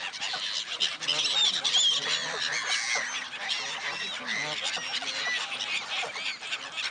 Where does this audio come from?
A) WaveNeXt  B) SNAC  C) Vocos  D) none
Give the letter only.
D